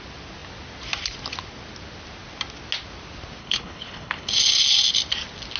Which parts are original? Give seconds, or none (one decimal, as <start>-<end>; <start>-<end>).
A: 0.0-3.4; 4.3-5.6